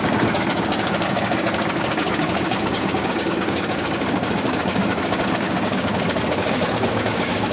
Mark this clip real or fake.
fake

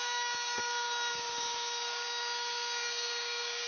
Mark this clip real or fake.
fake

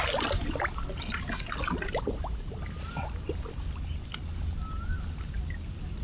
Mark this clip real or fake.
real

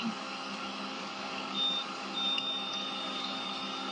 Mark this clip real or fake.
fake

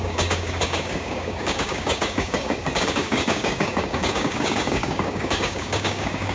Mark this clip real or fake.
fake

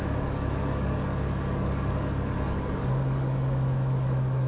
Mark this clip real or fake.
fake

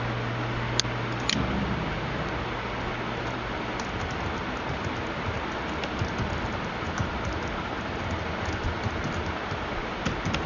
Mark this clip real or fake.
real